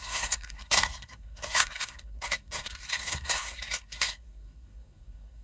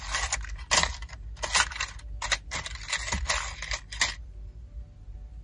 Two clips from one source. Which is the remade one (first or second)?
first